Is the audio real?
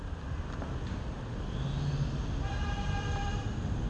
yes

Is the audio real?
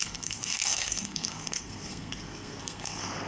no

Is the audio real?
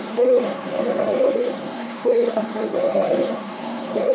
no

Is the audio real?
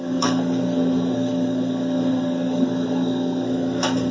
no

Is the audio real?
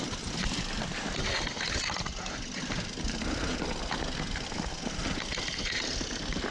yes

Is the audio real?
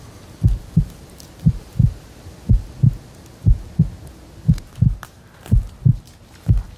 yes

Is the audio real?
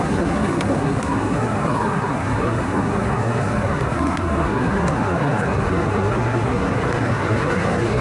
no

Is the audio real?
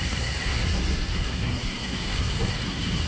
no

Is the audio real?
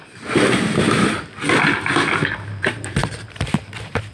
yes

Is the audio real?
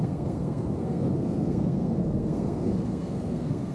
no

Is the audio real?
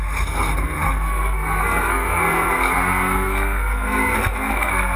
no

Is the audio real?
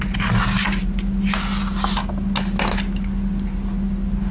yes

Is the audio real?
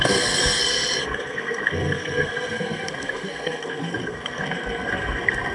no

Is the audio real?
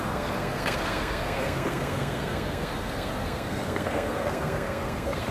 no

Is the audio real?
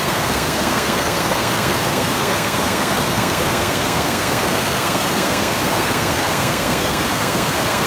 no